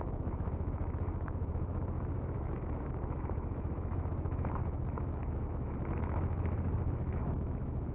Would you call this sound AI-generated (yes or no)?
yes